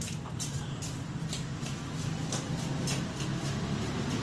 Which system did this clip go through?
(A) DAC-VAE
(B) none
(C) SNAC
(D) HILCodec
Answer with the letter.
B